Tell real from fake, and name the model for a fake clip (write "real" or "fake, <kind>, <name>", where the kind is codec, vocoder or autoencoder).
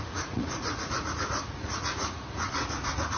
fake, vocoder, Vocos